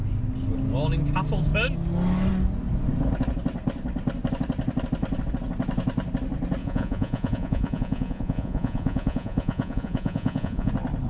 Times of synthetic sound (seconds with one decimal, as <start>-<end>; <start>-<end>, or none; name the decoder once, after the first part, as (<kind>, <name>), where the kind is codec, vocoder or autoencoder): 6.6-10.7 (vocoder, Vocos)